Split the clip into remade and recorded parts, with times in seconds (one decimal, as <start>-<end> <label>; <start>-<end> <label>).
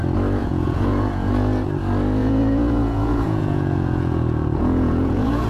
0.0-0.4 recorded; 0.4-1.3 remade; 1.3-2.2 recorded; 2.2-5.5 remade